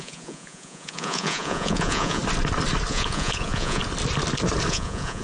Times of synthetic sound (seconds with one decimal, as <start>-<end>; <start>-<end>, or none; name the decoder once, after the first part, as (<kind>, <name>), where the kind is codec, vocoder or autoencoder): 0.0-2.2 (vocoder, Vocos); 2.9-3.8; 4.7-5.2

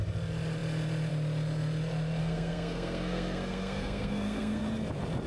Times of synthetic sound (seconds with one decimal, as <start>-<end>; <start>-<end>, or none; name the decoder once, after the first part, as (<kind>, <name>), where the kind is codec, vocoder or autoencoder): 2.2-4.6 (codec, SNAC)

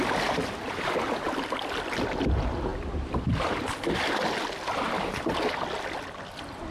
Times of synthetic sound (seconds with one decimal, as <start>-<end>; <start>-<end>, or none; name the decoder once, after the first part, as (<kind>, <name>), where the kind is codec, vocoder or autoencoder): none

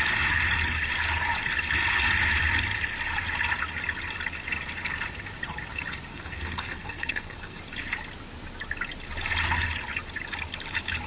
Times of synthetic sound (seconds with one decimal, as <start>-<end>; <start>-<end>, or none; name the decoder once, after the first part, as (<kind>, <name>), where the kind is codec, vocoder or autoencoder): 6.1-7.6 (codec, SNAC)

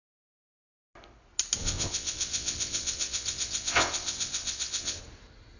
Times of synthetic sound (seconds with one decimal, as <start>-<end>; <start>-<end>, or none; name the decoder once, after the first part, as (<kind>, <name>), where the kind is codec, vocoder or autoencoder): 1.6-5.0 (vocoder, WaveNeXt)